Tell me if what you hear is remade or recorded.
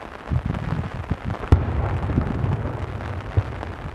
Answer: recorded